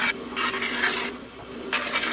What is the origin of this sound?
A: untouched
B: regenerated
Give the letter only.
A